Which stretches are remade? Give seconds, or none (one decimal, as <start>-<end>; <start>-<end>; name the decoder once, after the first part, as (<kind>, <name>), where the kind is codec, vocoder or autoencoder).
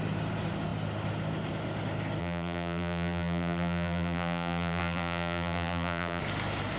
2.2-6.2 (vocoder, BigVGAN v2)